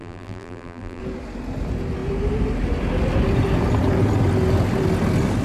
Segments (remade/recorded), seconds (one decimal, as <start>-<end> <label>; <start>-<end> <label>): 0.0-1.0 remade; 1.0-5.4 recorded